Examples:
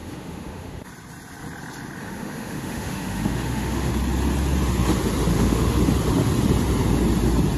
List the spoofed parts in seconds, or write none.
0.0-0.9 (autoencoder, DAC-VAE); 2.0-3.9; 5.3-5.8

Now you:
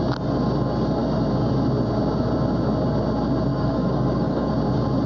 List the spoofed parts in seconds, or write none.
3.5-4.5 (codec, DAC)